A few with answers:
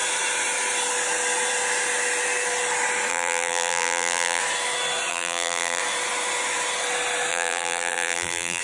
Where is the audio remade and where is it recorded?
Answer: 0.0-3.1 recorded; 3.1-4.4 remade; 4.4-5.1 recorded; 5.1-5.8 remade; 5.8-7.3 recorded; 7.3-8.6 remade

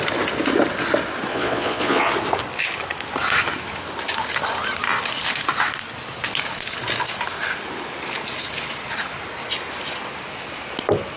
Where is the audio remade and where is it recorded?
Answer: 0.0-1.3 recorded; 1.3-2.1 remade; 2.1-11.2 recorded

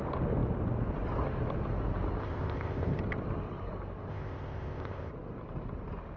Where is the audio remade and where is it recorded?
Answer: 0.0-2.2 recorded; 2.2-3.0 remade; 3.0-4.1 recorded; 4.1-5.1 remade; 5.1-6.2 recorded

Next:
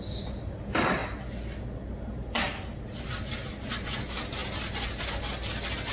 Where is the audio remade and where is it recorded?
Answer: 0.0-5.9 recorded

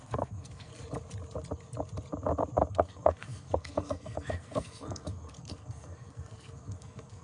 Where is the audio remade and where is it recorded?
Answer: 0.0-0.7 remade; 0.7-2.7 recorded; 2.7-7.2 remade

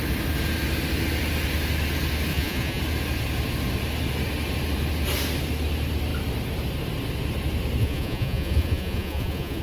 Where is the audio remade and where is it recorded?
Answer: 0.0-2.3 recorded; 2.3-2.8 remade; 2.8-7.8 recorded; 7.8-9.6 remade